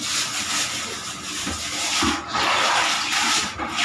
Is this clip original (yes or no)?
yes